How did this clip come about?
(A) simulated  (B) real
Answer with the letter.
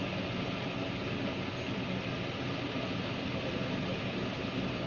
B